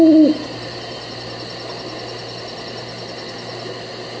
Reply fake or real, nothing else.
real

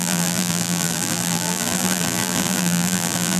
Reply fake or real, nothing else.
fake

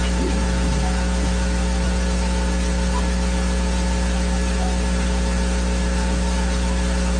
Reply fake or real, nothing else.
real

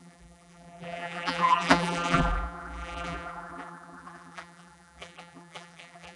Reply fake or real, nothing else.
fake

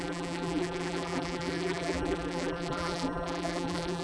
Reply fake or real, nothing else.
fake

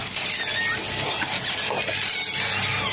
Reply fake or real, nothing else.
real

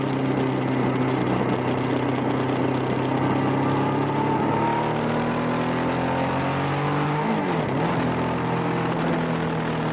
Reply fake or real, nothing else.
real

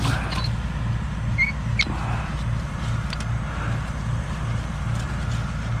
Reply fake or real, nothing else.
real